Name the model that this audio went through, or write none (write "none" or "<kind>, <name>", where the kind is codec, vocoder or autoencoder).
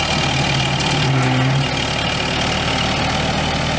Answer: none